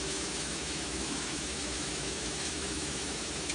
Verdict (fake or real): fake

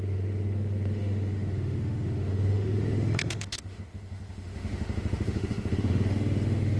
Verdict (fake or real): fake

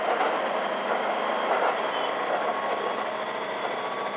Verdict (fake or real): real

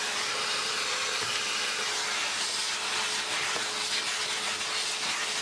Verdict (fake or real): real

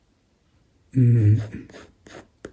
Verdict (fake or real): real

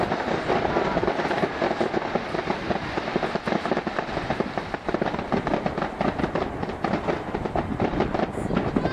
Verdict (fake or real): real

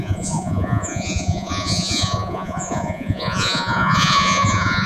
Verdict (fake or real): fake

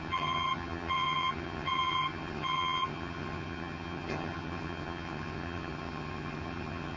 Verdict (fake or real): fake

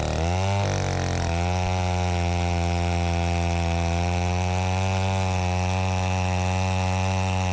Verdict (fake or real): real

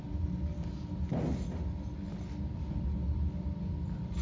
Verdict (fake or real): real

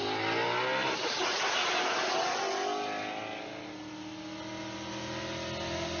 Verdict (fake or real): real